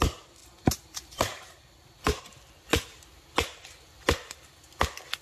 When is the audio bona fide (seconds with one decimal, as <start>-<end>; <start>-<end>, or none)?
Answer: 0.0-0.4; 2.2-5.2